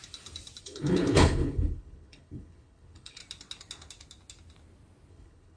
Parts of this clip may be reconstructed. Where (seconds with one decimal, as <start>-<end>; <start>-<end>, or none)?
0.6-3.2; 5.1-5.6